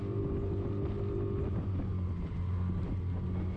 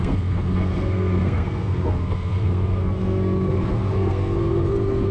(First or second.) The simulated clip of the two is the second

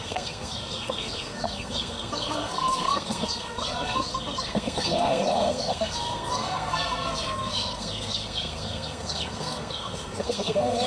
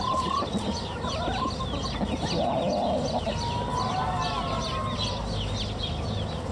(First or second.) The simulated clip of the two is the first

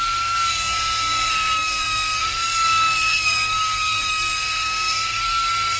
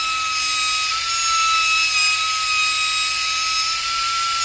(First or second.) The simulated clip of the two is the first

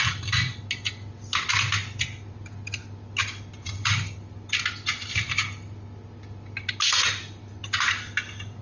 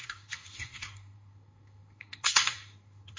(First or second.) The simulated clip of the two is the second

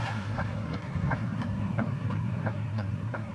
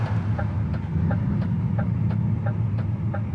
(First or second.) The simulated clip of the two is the first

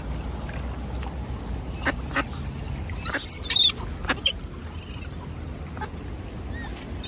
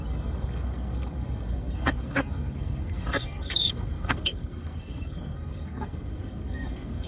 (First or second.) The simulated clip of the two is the second